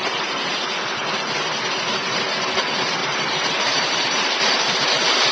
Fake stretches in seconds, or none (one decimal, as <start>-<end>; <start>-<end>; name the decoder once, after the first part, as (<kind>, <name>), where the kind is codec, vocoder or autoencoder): 3.0-4.4 (vocoder, BigVGAN v2)